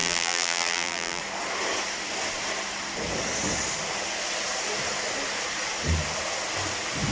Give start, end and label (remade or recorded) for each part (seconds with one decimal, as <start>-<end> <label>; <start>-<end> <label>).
0.0-1.2 remade; 1.2-7.1 recorded